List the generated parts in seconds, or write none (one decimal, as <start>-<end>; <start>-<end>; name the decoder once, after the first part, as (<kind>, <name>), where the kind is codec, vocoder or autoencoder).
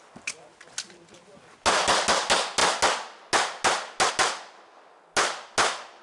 none